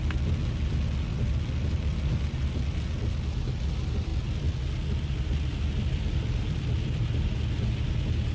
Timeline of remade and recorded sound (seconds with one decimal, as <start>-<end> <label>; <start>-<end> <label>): 0.0-8.3 recorded